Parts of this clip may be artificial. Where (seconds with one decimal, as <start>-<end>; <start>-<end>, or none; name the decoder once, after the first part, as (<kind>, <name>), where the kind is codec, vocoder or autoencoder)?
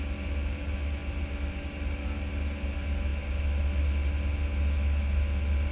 none